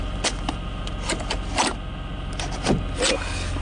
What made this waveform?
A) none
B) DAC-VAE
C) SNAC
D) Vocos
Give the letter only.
A